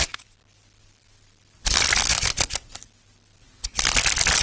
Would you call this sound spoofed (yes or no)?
no